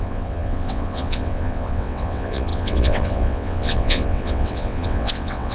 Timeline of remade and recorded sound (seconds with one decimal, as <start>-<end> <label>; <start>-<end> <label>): 0.0-5.5 remade